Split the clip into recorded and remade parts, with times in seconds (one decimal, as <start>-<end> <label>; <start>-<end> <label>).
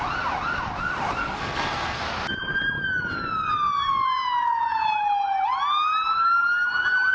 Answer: 0.0-1.2 recorded; 1.2-2.0 remade; 2.0-7.1 recorded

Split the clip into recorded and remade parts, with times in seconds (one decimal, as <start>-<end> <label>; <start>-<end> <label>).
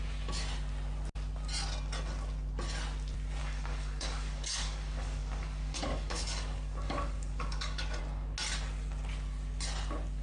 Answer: 0.0-3.4 recorded; 3.4-8.0 remade; 8.0-10.2 recorded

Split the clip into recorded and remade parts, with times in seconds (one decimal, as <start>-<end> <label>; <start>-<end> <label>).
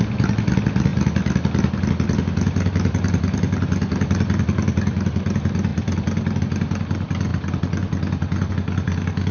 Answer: 0.0-9.3 recorded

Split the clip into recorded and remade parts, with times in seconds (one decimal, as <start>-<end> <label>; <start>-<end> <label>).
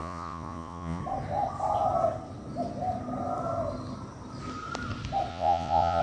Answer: 0.0-1.0 remade; 1.0-5.3 recorded; 5.3-6.0 remade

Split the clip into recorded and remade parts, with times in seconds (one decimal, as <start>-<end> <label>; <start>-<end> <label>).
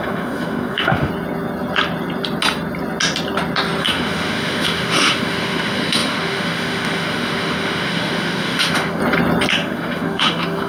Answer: 0.0-1.1 remade; 1.1-3.8 recorded; 3.8-9.0 remade; 9.0-9.5 recorded; 9.5-10.7 remade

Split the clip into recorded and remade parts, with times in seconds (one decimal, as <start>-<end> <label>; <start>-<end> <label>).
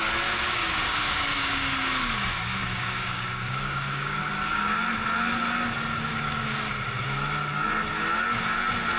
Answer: 0.0-0.6 recorded; 0.6-4.2 remade; 4.2-6.1 recorded; 6.1-6.7 remade; 6.7-9.0 recorded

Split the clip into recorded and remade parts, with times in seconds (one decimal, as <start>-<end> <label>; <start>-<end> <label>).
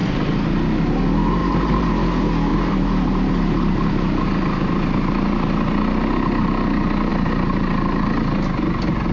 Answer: 0.0-1.4 recorded; 1.4-1.9 remade; 1.9-2.5 recorded; 2.5-3.9 remade; 3.9-9.1 recorded